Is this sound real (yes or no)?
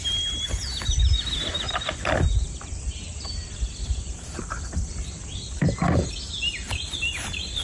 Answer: no